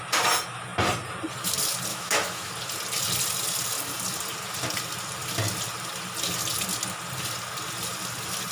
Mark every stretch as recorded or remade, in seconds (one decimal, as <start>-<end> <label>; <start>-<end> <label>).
0.0-1.9 recorded; 1.9-2.5 remade; 2.5-8.5 recorded